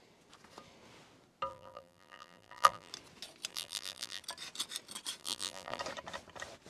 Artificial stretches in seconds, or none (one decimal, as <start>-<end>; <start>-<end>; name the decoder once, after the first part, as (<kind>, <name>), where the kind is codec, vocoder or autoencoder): 1.5-2.9 (vocoder, BigVGAN v2); 3.5-4.2; 5.2-5.8